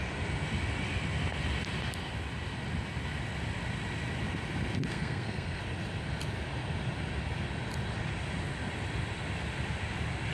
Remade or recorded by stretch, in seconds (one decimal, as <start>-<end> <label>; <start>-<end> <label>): 0.0-4.9 recorded; 4.9-5.6 remade; 5.6-10.3 recorded

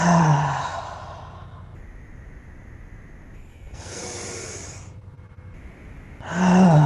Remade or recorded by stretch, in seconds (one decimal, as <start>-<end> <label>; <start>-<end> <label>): 0.0-3.5 recorded; 3.5-4.0 remade; 4.0-6.9 recorded

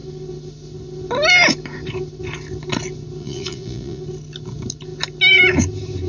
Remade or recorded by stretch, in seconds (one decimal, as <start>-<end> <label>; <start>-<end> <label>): 0.0-3.2 recorded; 3.2-4.0 remade; 4.0-6.1 recorded